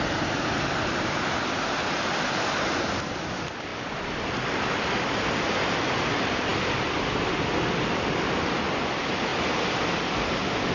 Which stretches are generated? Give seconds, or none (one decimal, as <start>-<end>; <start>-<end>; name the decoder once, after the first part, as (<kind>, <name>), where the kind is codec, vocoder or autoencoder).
3.7-4.8 (vocoder, BigVGAN v2)